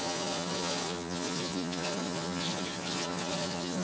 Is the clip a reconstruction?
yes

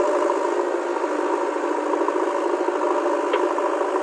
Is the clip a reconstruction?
no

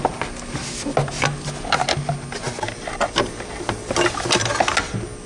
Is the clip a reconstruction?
no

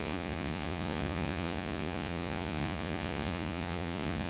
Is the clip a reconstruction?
yes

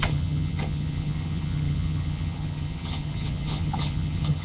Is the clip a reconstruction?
yes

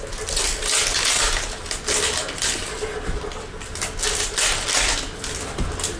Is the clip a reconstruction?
no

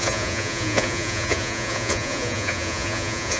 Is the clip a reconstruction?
yes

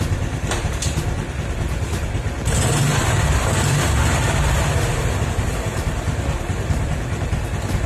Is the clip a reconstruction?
no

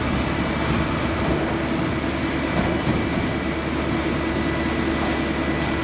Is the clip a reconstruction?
no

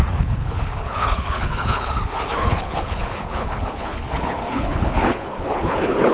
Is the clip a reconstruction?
yes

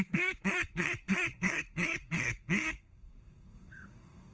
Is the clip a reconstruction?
yes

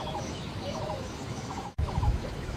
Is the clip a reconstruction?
yes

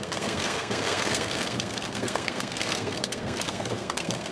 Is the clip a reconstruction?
yes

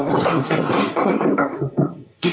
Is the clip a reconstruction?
yes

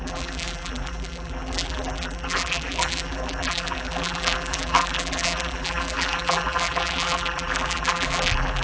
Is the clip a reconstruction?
yes